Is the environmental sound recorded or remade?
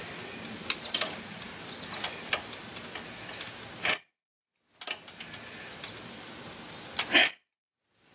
recorded